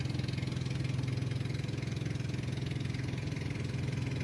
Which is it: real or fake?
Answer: real